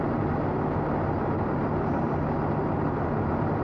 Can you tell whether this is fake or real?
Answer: real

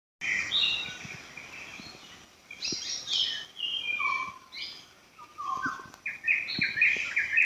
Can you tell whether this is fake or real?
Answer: real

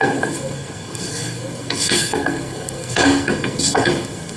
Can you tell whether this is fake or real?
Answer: fake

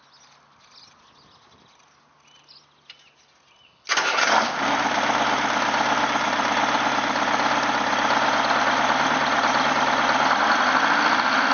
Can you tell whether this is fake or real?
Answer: real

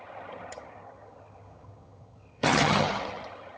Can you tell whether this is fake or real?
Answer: fake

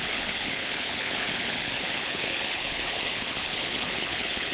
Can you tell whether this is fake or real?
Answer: fake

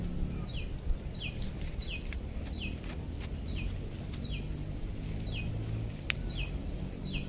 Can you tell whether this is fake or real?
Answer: real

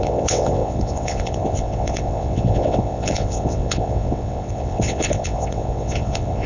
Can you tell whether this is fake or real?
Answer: fake